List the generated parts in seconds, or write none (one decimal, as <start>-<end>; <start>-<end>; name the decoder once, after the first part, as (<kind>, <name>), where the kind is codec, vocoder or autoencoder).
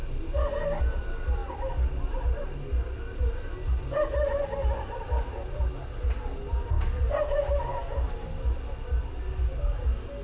none